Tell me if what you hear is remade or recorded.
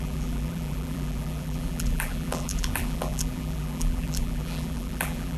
remade